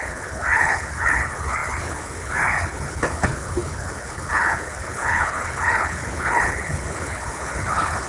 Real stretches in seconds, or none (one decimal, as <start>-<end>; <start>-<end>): none